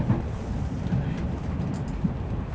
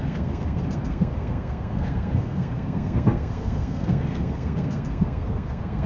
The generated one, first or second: second